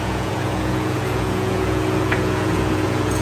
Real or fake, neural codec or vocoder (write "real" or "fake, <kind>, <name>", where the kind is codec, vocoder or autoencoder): fake, vocoder, Vocos